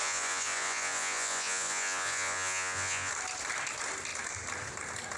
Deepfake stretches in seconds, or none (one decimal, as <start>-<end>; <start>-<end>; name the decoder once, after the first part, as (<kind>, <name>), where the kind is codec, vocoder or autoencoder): 0.0-3.1 (vocoder, Vocos)